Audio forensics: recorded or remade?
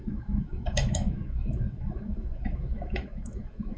remade